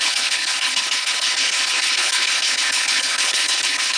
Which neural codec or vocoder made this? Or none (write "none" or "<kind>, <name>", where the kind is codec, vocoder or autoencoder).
codec, HILCodec